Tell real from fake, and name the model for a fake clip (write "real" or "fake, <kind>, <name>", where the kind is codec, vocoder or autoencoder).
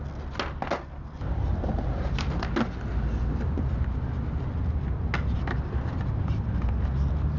real